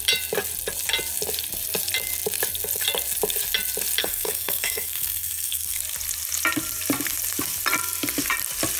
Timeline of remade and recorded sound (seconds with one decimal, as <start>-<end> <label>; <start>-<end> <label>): 0.0-4.0 recorded; 4.0-5.8 remade; 5.8-8.8 recorded